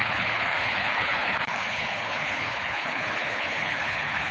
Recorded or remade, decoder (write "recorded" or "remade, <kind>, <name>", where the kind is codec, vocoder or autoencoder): remade, codec, HILCodec